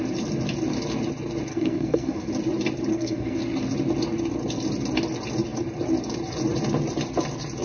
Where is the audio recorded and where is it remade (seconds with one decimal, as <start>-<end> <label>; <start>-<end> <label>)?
0.0-1.5 recorded; 1.5-2.3 remade; 2.3-2.9 recorded; 2.9-3.4 remade; 3.4-7.6 recorded